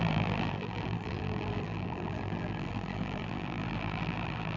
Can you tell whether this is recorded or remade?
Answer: remade